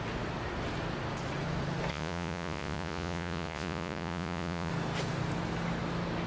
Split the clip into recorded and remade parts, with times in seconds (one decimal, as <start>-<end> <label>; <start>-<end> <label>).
0.0-1.9 recorded; 1.9-4.7 remade; 4.7-6.3 recorded